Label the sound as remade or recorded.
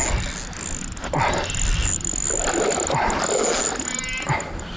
recorded